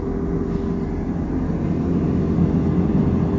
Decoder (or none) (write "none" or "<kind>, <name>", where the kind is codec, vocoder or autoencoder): none